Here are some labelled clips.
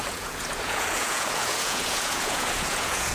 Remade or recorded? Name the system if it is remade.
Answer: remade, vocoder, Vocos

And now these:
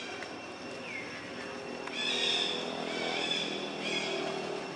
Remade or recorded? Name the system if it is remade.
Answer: recorded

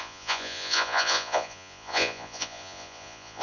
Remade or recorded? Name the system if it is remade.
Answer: remade, vocoder, Vocos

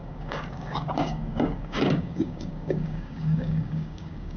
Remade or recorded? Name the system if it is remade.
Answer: remade, codec, DAC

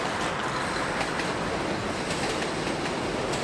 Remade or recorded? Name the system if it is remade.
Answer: recorded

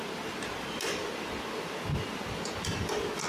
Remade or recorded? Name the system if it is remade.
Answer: recorded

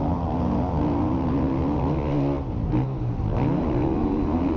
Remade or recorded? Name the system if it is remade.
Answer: recorded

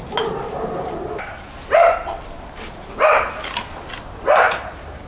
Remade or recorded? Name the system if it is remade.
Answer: recorded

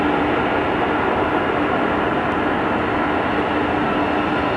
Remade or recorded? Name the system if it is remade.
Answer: recorded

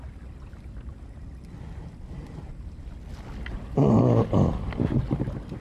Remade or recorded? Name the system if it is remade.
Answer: recorded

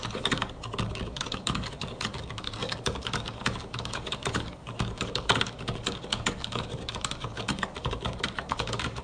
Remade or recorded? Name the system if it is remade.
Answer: remade, codec, DAC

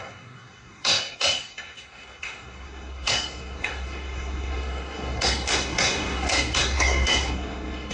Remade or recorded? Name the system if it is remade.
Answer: remade, codec, SNAC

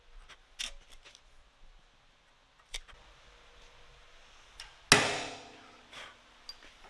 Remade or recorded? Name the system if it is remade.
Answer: recorded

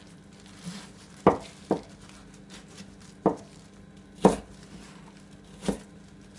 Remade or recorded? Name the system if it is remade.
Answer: recorded